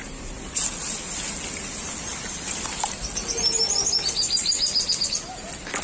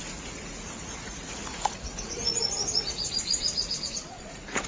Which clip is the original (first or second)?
first